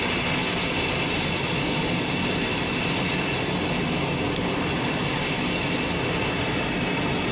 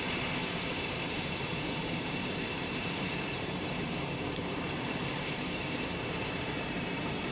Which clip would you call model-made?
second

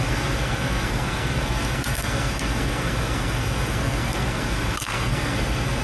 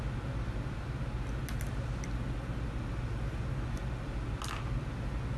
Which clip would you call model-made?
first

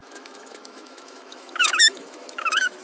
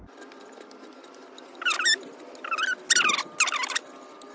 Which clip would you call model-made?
first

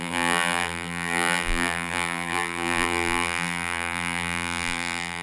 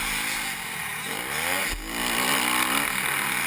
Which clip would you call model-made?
first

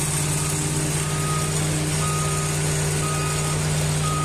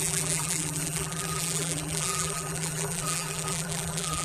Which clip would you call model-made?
second